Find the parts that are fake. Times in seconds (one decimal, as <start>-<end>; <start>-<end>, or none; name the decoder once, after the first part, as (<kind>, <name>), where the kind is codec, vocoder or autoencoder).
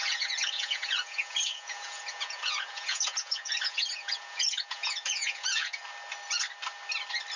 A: 0.0-5.8 (vocoder, Vocos)